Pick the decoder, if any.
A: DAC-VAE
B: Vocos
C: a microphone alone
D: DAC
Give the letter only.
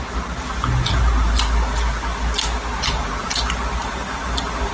C